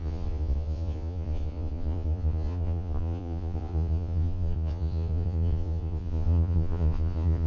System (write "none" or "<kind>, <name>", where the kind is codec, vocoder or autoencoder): vocoder, Vocos